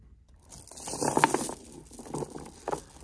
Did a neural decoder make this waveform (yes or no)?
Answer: no